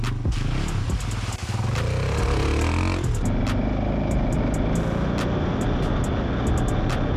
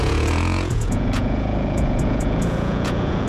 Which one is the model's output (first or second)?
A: second